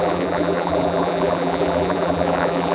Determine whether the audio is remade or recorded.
remade